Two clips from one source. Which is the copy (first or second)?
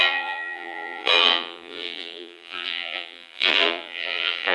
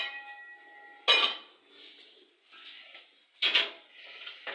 first